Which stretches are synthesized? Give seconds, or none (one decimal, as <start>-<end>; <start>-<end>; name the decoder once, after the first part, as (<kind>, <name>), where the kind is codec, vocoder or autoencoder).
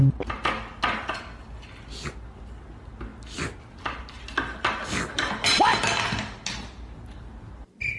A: none